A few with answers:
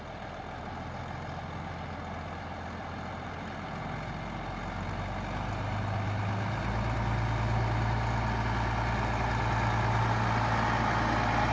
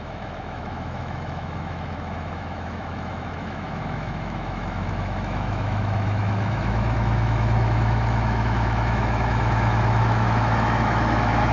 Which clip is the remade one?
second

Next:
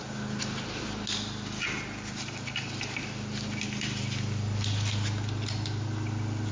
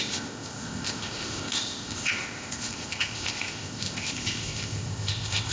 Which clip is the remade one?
second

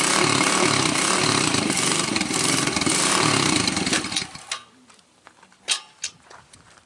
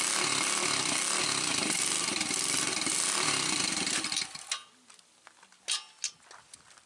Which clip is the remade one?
first